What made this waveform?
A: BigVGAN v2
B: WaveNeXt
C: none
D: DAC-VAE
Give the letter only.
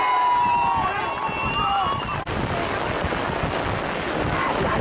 C